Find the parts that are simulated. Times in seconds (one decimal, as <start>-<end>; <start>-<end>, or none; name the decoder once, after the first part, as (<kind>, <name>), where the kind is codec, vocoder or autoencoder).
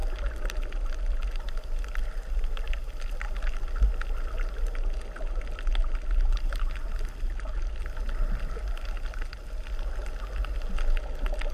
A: none